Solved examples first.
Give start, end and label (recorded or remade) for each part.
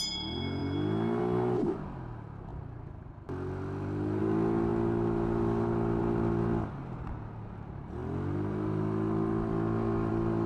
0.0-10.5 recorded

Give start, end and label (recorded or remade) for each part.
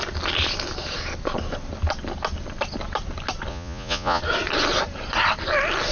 0.0-3.5 recorded; 3.5-4.2 remade; 4.2-5.9 recorded